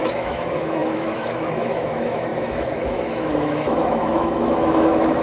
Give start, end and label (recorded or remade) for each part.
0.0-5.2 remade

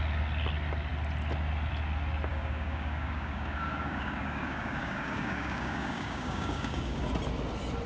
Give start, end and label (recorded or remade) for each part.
0.0-2.3 recorded; 2.3-7.0 remade; 7.0-7.9 recorded

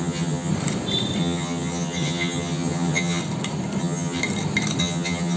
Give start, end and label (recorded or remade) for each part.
0.0-0.5 remade; 0.5-1.2 recorded; 1.2-3.2 remade; 3.2-3.8 recorded; 3.8-4.2 remade; 4.2-4.8 recorded; 4.8-5.4 remade

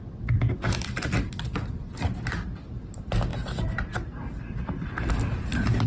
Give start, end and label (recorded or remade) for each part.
0.0-5.9 recorded

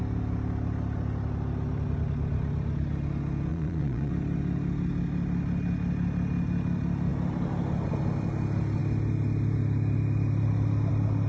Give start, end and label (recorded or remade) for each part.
0.0-3.5 recorded; 3.5-4.1 remade; 4.1-11.3 recorded

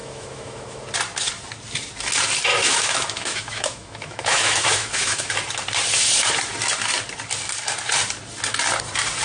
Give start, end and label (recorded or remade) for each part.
0.0-0.8 remade; 0.8-2.5 recorded; 2.5-5.3 remade; 5.3-9.2 recorded

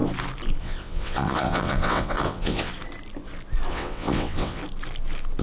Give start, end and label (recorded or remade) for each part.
0.0-0.6 recorded; 0.6-2.7 remade; 2.7-3.7 recorded; 3.7-4.6 remade; 4.6-5.4 recorded

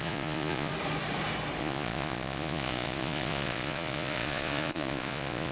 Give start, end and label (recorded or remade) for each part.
0.0-0.7 remade; 0.7-1.6 recorded; 1.6-5.5 remade